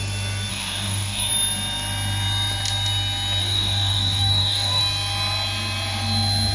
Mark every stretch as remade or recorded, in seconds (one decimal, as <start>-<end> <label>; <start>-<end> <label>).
0.0-0.5 recorded; 0.5-1.3 remade; 1.3-3.4 recorded; 3.4-4.8 remade; 4.8-6.5 recorded